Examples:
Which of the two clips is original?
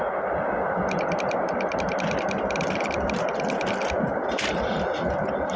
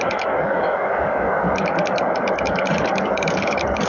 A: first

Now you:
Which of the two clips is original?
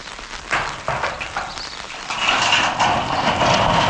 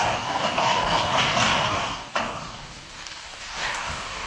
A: first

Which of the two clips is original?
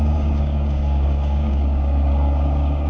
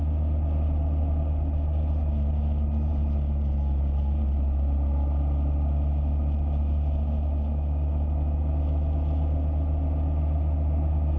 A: second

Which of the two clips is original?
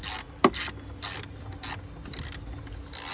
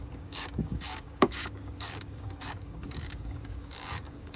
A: first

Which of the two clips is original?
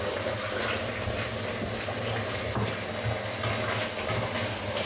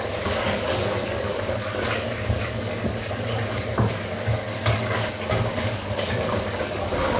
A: first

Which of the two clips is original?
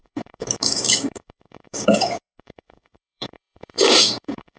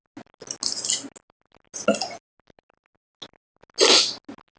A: second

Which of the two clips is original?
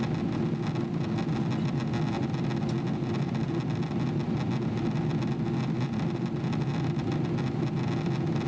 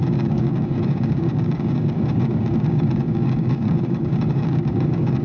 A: first